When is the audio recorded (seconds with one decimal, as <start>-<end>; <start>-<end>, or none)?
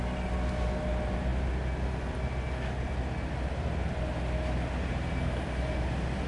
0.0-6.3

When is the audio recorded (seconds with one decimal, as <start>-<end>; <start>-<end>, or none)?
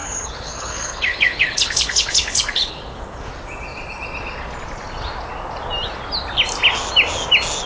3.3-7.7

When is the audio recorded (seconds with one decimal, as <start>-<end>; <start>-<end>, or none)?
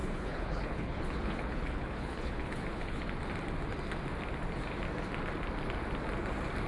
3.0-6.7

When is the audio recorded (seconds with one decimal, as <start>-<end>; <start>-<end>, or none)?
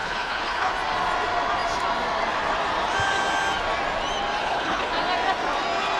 0.7-4.4; 4.9-6.0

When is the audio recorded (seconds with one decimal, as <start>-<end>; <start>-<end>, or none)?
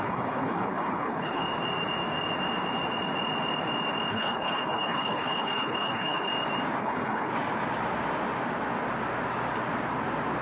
1.4-4.1; 6.3-6.8; 7.3-10.4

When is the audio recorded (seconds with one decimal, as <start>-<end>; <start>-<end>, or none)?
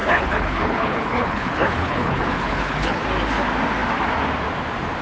3.0-5.0